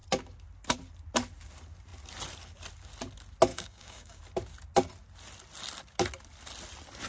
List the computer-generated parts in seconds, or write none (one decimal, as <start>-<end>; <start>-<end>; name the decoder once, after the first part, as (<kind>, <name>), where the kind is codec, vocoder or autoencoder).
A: 3.5-4.2 (codec, DAC)